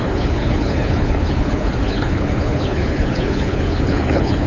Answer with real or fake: fake